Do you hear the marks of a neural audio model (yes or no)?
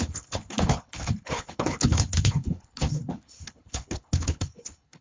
yes